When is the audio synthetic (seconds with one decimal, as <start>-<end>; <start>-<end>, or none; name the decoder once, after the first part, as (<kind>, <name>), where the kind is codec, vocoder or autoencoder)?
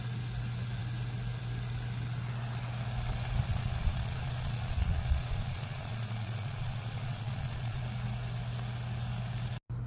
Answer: 3.5-7.8 (vocoder, Vocos)